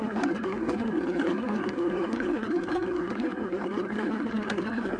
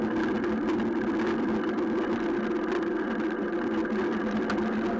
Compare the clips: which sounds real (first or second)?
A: second